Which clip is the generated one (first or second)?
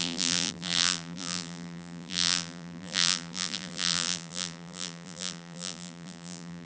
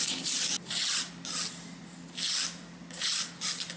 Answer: first